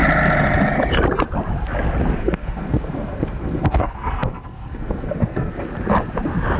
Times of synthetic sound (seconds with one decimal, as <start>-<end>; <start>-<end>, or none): 2.2-5.5